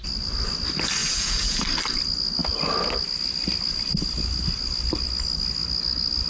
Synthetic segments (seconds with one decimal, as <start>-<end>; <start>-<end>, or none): 1.0-1.6